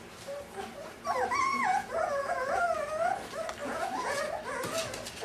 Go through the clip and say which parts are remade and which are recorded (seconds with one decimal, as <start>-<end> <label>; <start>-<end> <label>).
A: 0.0-1.4 recorded; 1.4-2.6 remade; 2.6-3.6 recorded; 3.6-4.3 remade; 4.3-5.2 recorded